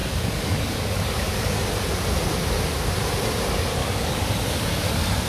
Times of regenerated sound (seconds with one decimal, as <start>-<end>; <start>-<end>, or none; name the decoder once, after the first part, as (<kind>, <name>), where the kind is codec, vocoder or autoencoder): 0.0-1.5 (codec, DAC); 3.8-5.3